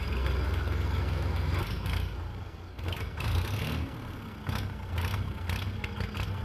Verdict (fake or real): fake